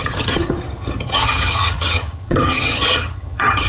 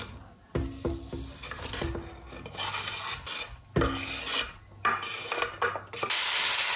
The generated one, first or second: first